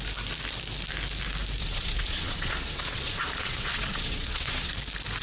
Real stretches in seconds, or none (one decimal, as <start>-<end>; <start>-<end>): 0.0-1.6; 4.7-5.2